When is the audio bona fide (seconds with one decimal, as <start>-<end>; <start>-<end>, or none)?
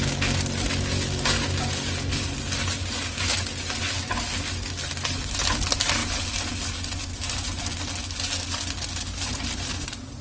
0.0-10.2